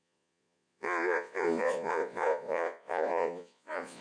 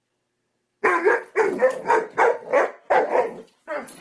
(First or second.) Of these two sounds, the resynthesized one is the first